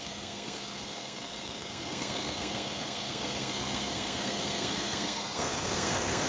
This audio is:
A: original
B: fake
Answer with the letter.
B